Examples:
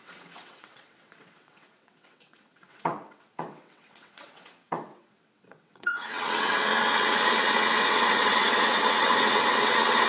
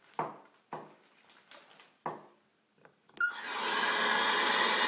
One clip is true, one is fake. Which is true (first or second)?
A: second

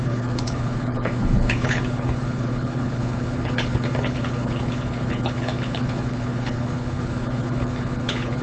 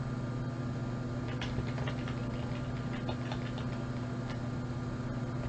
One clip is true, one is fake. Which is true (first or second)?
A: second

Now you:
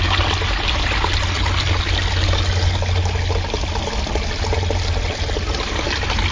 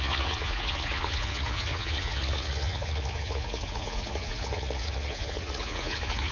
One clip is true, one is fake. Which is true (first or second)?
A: first